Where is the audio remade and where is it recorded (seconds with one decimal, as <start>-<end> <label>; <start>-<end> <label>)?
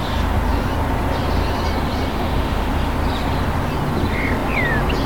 0.0-2.1 recorded; 2.1-2.7 remade; 2.7-5.1 recorded